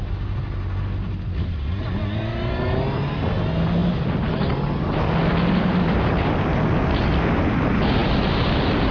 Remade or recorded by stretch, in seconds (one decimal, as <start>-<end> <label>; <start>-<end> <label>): 0.0-8.9 recorded